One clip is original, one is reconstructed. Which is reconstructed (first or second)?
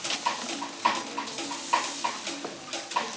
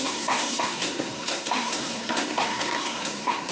second